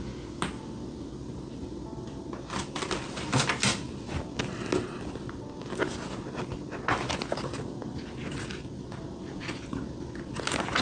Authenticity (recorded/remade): recorded